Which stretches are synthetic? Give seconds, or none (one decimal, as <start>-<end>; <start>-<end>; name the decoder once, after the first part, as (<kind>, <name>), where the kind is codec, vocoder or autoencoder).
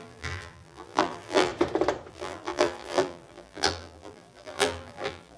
0.0-1.5 (vocoder, BigVGAN v2); 2.1-5.4